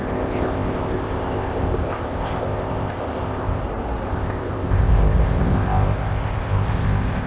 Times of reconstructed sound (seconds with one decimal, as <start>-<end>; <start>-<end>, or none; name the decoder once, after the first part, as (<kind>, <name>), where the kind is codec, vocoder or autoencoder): 0.0-3.6 (codec, ZipCodec); 4.1-7.3